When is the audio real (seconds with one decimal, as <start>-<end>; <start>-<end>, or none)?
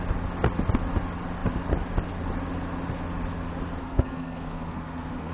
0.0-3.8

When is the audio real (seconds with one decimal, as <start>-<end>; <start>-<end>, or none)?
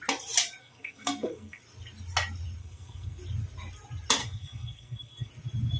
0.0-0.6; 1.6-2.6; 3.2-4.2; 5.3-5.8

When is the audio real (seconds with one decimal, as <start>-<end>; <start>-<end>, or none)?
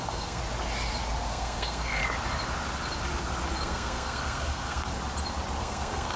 0.4-1.3; 2.0-3.6; 4.9-5.6